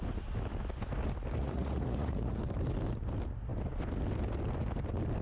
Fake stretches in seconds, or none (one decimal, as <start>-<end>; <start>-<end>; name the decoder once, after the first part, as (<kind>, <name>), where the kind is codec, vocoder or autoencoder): 1.4-2.4 (vocoder, Vocos)